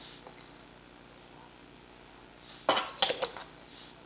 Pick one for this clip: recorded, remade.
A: recorded